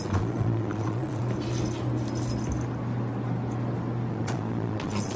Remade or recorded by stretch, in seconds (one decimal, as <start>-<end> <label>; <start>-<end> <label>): 0.0-1.2 remade; 1.2-4.1 recorded; 4.1-5.2 remade